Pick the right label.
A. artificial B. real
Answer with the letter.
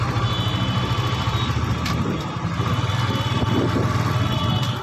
B